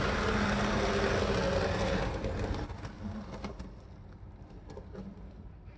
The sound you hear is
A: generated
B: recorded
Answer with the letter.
B